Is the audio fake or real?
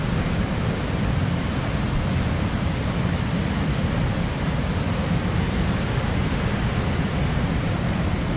real